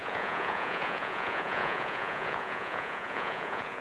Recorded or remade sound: remade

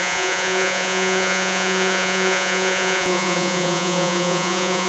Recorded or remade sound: remade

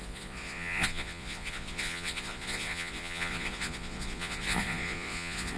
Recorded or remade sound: remade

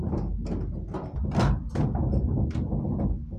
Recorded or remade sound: recorded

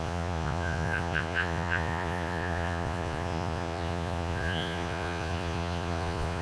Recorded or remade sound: remade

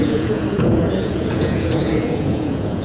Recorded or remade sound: remade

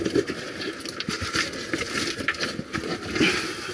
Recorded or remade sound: recorded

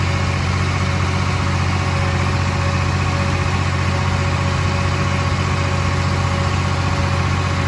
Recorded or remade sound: recorded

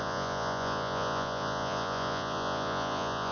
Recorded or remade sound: remade